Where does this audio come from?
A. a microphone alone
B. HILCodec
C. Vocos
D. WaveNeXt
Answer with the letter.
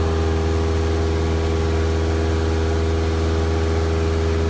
A